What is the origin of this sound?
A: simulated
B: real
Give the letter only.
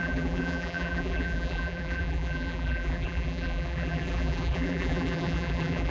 A